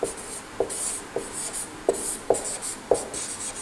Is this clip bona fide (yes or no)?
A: yes